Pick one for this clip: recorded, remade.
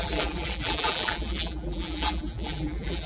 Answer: remade